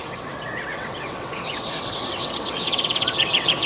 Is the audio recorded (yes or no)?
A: no